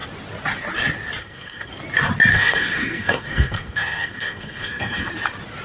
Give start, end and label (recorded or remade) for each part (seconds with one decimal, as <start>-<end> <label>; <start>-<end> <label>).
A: 0.0-1.2 recorded; 1.2-1.7 remade; 1.7-2.3 recorded; 2.3-5.1 remade; 5.1-5.6 recorded